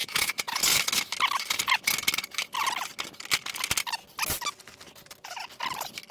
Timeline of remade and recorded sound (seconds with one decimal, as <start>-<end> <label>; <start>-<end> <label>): 0.0-0.6 remade; 0.6-6.1 recorded